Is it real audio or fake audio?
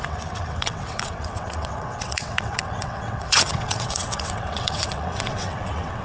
fake